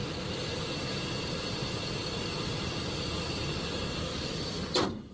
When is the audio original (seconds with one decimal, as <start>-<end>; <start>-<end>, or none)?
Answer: 0.0-5.1